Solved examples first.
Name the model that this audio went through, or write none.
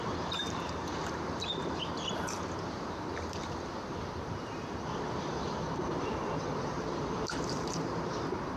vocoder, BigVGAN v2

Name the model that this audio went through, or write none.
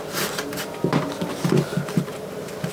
none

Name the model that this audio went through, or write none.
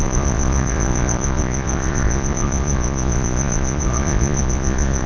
vocoder, Vocos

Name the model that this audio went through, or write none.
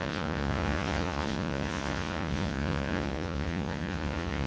vocoder, Vocos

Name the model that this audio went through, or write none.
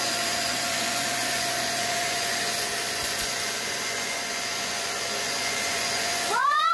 vocoder, Vocos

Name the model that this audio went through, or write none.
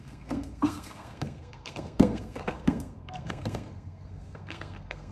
codec, SNAC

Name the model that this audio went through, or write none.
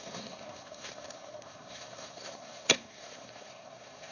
codec, SNAC